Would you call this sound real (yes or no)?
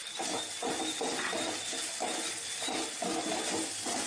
no